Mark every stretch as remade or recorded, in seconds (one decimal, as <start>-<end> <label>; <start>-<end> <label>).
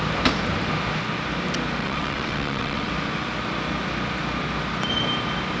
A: 0.0-1.8 recorded; 1.8-2.9 remade; 2.9-5.6 recorded